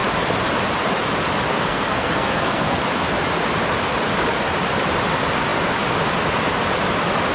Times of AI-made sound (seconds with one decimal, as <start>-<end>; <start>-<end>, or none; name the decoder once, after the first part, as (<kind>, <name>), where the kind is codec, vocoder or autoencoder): 1.5-2.8 (codec, SNAC)